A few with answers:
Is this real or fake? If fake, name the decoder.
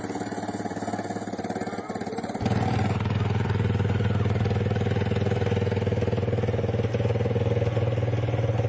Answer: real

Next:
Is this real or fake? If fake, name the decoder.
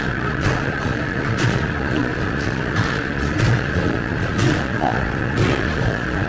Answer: fake, vocoder, Vocos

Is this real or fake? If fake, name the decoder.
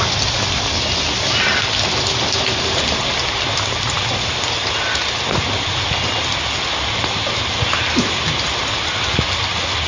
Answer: real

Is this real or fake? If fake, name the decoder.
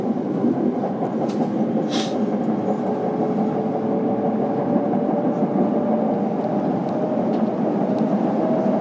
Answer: real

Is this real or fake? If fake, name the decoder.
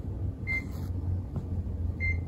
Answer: real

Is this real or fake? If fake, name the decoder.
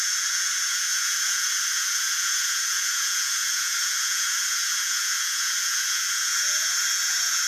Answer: fake, vocoder, Vocos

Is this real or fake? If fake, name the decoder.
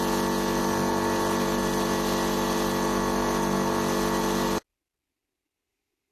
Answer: real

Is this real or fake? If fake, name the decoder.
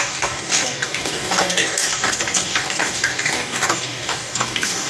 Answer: fake, codec, DAC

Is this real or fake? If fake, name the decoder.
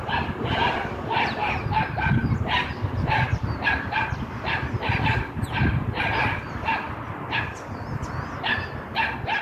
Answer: real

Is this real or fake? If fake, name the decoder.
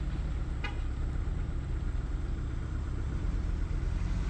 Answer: fake, vocoder, BigVGAN v2